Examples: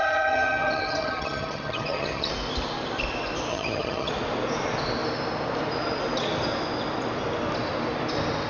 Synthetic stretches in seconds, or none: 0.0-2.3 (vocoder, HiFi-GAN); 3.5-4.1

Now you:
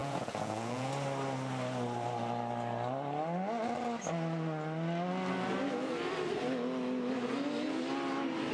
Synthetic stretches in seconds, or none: 0.0-0.9 (vocoder, Vocos)